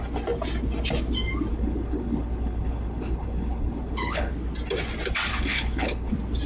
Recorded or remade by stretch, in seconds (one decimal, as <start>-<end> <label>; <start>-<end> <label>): 0.0-1.5 recorded; 1.5-4.3 remade; 4.3-5.3 recorded; 5.3-6.1 remade; 6.1-6.5 recorded